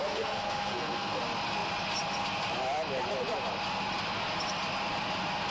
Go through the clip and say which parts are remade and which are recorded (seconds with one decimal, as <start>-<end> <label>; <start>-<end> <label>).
0.0-1.2 remade; 1.2-5.5 recorded